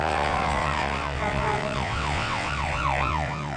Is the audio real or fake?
fake